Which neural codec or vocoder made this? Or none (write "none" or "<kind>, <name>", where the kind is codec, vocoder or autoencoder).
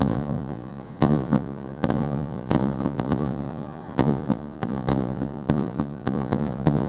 vocoder, Vocos